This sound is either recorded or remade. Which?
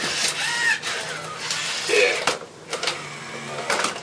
recorded